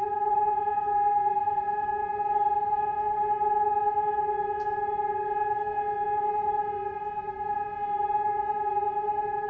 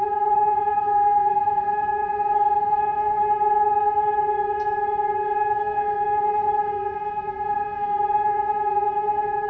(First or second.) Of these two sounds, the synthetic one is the second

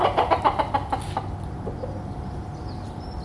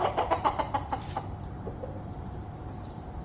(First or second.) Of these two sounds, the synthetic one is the second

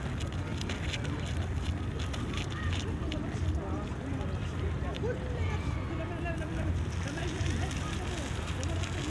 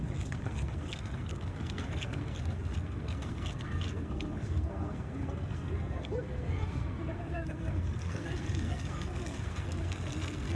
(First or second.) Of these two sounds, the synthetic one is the second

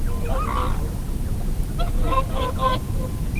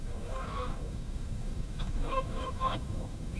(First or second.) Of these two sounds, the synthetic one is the second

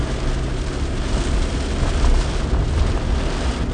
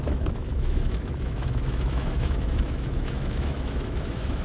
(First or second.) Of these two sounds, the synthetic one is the second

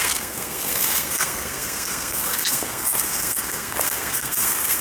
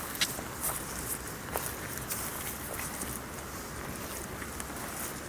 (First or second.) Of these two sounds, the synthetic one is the first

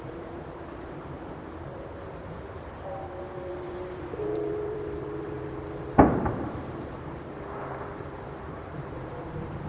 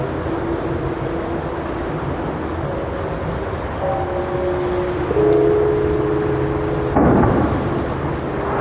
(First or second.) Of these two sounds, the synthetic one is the first